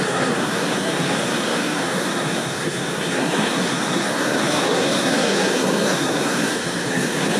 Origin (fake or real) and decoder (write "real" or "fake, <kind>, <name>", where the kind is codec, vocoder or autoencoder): fake, codec, SNAC